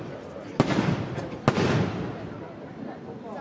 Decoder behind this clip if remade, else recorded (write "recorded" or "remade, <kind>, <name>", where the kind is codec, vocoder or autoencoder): recorded